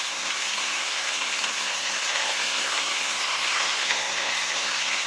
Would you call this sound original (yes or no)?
no